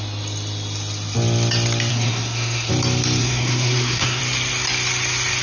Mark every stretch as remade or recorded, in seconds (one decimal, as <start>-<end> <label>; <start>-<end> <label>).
0.0-1.9 recorded; 1.9-2.7 remade; 2.7-3.2 recorded; 3.2-4.2 remade; 4.2-5.4 recorded